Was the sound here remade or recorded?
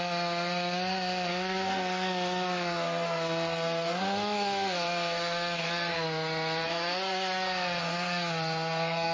remade